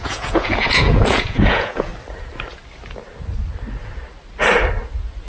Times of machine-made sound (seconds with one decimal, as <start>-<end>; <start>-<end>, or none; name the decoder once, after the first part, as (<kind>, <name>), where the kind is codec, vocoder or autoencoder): 0.0-1.9 (vocoder, Vocos)